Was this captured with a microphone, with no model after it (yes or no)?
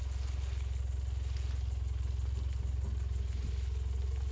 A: yes